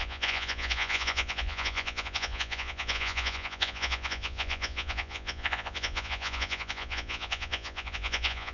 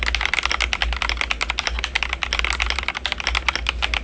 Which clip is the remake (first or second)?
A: first